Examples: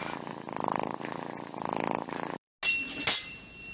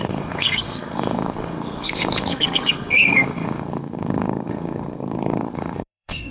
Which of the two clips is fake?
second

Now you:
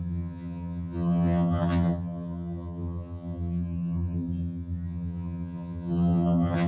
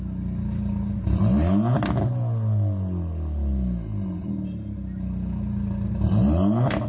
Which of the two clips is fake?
first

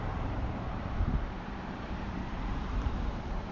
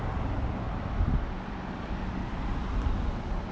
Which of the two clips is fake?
first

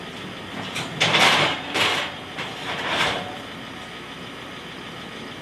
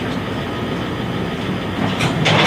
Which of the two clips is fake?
first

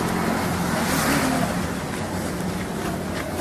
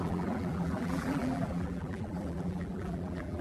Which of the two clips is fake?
second